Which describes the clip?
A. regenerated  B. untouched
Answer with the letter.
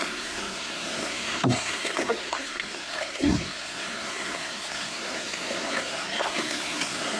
A